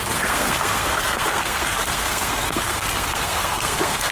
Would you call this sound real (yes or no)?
no